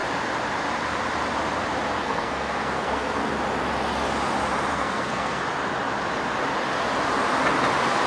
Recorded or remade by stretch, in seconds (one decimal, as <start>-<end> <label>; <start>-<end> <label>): 0.0-2.0 recorded; 2.0-3.2 remade; 3.2-4.7 recorded; 4.7-5.4 remade; 5.4-8.1 recorded